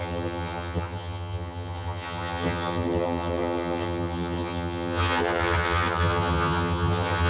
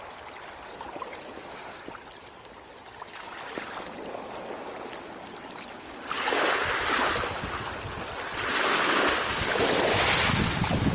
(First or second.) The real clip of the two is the second